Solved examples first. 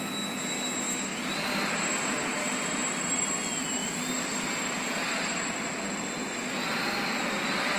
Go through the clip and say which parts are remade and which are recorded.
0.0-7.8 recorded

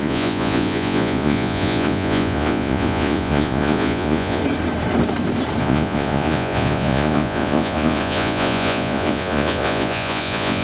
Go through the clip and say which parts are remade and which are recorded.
0.0-4.4 remade; 4.4-5.6 recorded; 5.6-10.6 remade

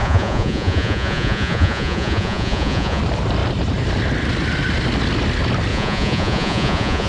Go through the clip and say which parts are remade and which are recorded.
0.0-3.0 remade; 3.0-5.7 recorded; 5.7-7.1 remade